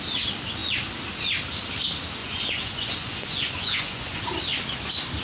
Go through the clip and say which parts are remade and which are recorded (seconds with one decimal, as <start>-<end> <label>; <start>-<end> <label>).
0.0-2.2 recorded; 2.2-4.2 remade; 4.2-5.2 recorded